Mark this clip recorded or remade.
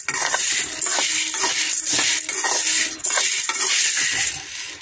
recorded